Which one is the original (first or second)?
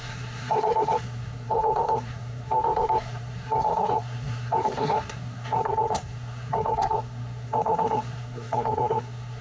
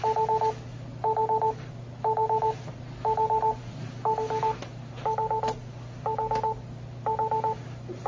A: second